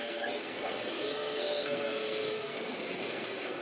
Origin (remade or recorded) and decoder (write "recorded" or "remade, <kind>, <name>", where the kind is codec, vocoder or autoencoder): remade, codec, SNAC